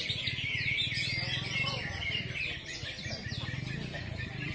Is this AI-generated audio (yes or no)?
no